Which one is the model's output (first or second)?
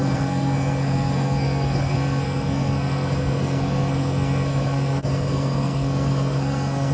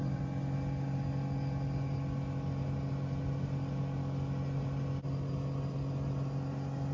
first